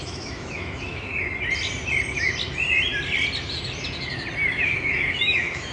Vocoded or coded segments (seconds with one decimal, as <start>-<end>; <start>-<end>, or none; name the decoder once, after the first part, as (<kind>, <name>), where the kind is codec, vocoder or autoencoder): 0.0-1.1 (autoencoder, DAC-VAE); 4.5-5.7